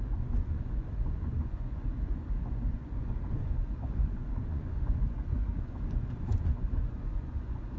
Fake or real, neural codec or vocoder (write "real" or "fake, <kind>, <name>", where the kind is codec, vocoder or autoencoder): fake, vocoder, Vocos